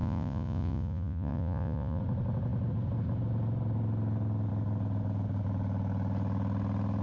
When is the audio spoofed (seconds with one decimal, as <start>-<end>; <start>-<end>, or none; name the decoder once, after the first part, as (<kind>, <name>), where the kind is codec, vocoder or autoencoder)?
0.0-2.0 (vocoder, Vocos)